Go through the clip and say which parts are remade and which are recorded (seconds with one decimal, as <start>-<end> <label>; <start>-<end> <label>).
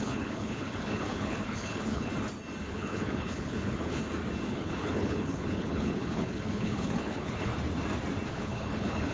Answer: 0.0-2.1 remade; 2.1-2.7 recorded; 2.7-4.0 remade; 4.0-4.5 recorded; 4.5-7.5 remade; 7.5-8.3 recorded; 8.3-9.1 remade